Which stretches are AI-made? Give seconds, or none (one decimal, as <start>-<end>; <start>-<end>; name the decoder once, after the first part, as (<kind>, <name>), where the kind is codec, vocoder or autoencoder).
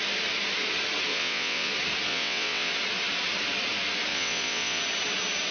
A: 1.1-1.7 (vocoder, WaveNeXt); 2.1-2.7; 4.1-4.8